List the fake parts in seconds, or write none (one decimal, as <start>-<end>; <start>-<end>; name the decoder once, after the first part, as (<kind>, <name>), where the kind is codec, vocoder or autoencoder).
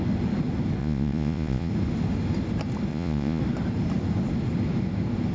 0.8-1.7 (vocoder, Vocos); 2.9-3.4